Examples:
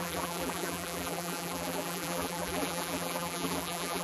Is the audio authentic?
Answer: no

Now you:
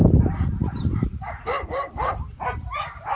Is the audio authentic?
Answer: no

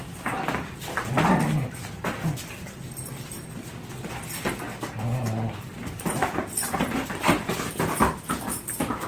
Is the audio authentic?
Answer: no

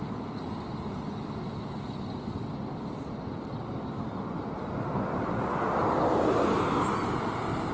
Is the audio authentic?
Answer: yes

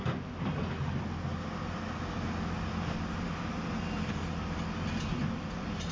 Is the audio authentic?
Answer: yes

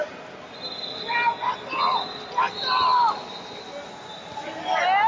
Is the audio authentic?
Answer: yes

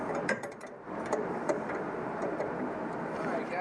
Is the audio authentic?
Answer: no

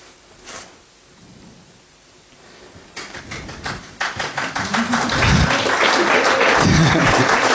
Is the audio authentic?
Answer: yes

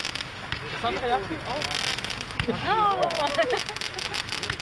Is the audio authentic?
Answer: yes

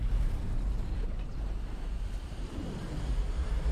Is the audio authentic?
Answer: no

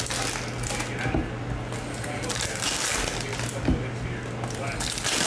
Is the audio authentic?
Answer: yes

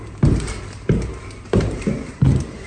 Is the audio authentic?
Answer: no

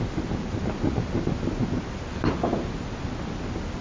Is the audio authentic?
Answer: yes